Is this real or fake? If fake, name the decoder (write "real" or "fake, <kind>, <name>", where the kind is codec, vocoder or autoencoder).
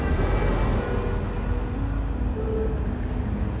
real